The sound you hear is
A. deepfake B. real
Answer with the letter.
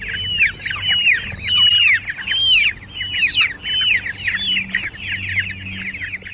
B